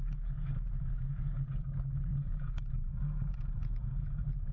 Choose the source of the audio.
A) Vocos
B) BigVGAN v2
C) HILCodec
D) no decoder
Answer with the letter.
A